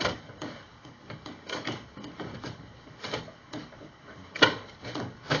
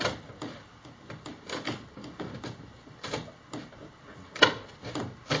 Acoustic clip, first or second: second